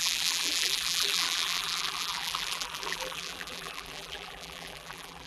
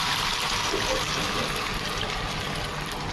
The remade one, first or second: first